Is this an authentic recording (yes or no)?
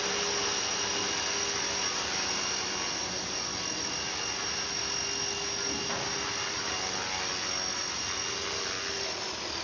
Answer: yes